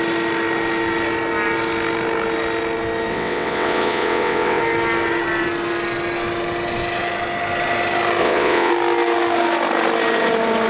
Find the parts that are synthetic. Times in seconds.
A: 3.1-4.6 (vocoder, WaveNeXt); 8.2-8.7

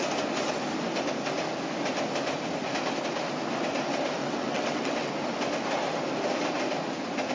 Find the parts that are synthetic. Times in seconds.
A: 4.2-5.1 (vocoder, WaveNeXt)

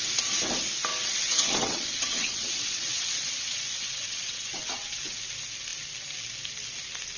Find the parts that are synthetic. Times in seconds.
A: 0.9-5.2 (vocoder, WaveNeXt)